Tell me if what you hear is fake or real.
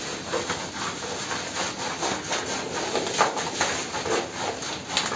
real